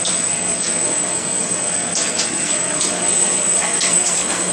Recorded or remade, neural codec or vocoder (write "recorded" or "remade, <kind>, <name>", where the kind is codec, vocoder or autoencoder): remade, codec, SNAC